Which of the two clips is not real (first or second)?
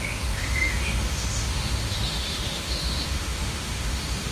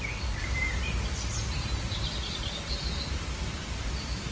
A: first